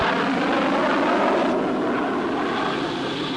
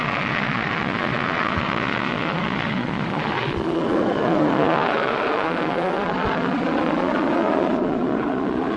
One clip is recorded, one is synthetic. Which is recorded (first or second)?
first